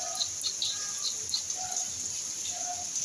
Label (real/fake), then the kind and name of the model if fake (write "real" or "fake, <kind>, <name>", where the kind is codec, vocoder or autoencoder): real